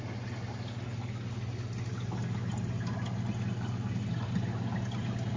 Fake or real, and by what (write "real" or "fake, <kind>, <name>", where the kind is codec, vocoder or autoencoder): real